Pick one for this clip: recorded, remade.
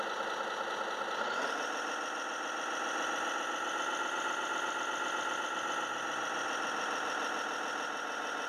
recorded